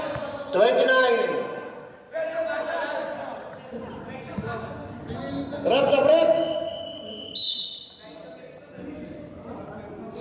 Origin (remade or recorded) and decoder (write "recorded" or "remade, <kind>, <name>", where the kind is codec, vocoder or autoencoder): recorded